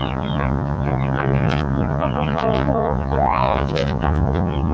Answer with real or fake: fake